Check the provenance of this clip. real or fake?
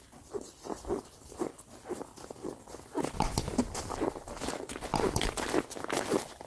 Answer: real